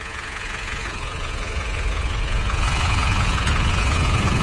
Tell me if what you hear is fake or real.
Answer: fake